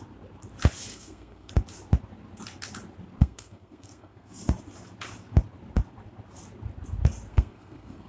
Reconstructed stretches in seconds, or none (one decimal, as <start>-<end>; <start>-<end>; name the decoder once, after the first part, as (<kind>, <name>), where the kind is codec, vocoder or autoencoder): 0.9-1.5 (codec, SNAC); 3.2-4.4; 7.3-8.1